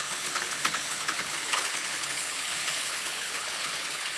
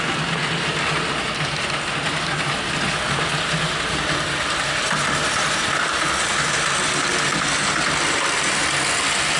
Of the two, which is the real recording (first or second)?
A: second